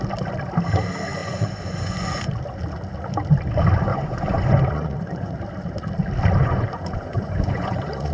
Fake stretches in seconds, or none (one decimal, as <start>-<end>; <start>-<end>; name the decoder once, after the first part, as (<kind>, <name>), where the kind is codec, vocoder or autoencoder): 1.2-2.2 (vocoder, Vocos); 3.9-5.3; 6.4-8.1